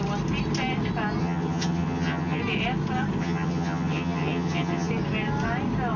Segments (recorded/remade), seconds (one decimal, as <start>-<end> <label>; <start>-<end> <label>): 0.0-1.2 recorded; 1.2-2.4 remade; 2.4-3.2 recorded; 3.2-4.9 remade; 4.9-6.0 recorded